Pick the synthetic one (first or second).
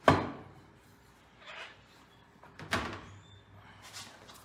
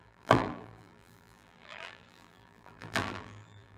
second